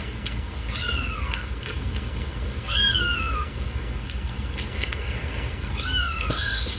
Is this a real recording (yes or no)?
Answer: no